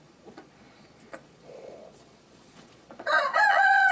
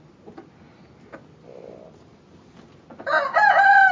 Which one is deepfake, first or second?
first